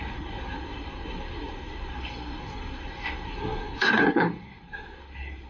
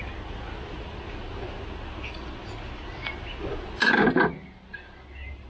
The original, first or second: second